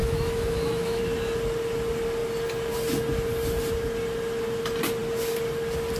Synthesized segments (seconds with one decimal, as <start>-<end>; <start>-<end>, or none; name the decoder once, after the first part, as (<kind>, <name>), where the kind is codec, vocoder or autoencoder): 0.0-1.0 (autoencoder, DAC-VAE)